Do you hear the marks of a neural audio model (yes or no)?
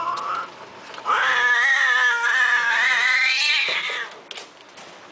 no